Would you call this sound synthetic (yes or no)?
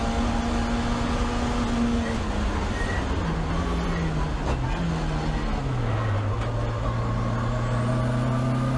no